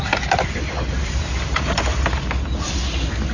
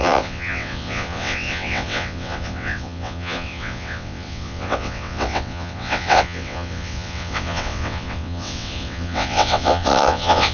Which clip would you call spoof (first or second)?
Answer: second